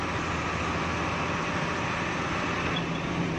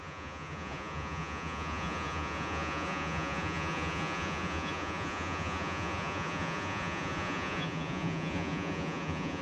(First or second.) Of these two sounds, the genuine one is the first